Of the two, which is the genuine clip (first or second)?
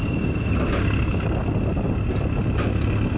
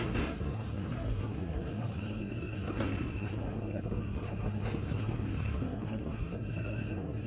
first